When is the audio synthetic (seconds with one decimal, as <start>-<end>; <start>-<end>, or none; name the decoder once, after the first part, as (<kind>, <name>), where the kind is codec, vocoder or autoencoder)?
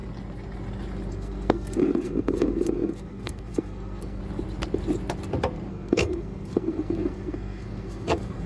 1.1-4.2 (codec, SNAC); 5.7-8.5